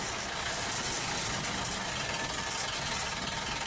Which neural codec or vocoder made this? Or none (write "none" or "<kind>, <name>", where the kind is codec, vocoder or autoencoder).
none